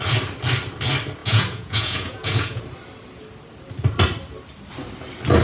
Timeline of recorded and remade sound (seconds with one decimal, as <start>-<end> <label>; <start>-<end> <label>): 0.0-1.2 recorded; 1.2-2.6 remade; 2.6-5.4 recorded

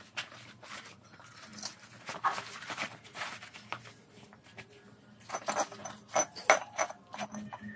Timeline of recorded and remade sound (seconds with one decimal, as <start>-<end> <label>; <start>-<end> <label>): 0.0-7.8 recorded

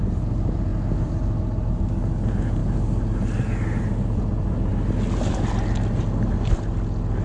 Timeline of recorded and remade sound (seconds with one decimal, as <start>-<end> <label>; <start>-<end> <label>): 0.0-7.2 recorded

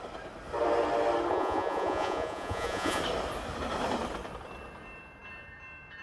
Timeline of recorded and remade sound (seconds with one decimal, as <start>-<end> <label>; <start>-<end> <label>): 0.0-1.3 recorded; 1.3-3.0 remade; 3.0-6.0 recorded

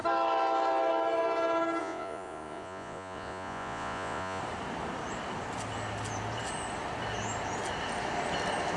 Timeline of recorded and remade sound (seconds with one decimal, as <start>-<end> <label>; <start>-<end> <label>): 0.0-1.8 recorded; 1.8-4.4 remade; 4.4-8.8 recorded